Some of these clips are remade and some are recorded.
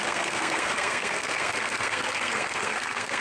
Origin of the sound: remade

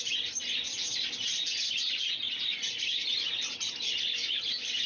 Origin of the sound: recorded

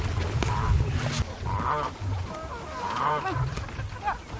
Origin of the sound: recorded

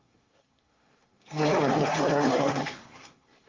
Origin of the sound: remade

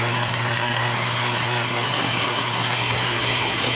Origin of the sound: remade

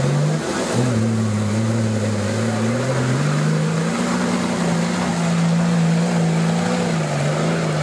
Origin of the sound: recorded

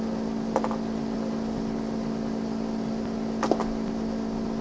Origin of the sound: recorded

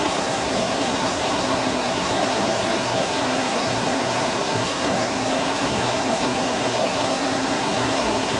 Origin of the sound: remade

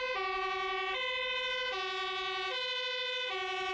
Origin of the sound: recorded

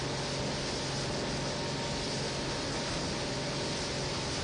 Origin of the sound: recorded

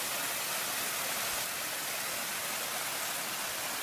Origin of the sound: recorded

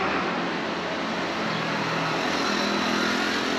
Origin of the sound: recorded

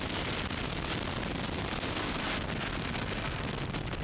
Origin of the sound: recorded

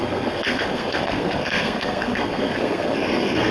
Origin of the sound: remade